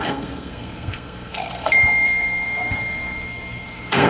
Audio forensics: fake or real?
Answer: fake